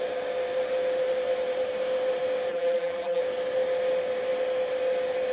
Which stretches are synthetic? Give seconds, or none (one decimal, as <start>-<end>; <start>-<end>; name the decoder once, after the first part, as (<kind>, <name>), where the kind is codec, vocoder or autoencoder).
2.5-3.2 (vocoder, BigVGAN v2)